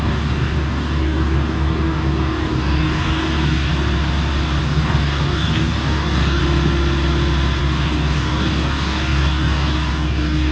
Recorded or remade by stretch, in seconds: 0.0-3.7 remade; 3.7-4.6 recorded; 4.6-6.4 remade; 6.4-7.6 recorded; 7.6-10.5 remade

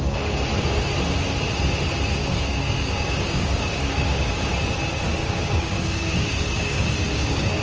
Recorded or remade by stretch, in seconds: 0.0-2.2 recorded; 2.2-4.5 remade; 4.5-5.2 recorded; 5.2-7.6 remade

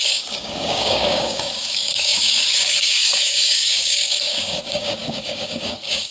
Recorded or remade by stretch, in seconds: 0.0-6.1 remade

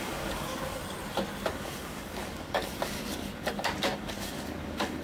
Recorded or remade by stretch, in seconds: 0.0-0.8 remade; 0.8-1.5 recorded; 1.5-5.0 remade

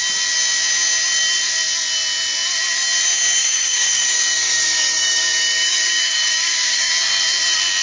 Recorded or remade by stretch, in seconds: 0.0-3.4 recorded; 3.4-6.9 remade; 6.9-7.8 recorded